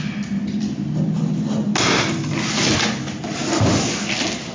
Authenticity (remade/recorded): recorded